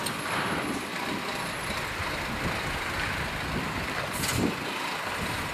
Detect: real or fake real